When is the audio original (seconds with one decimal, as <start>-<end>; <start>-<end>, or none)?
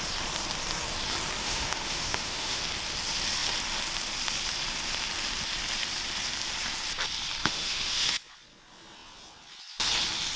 0.0-1.4; 2.6-7.4; 8.2-10.4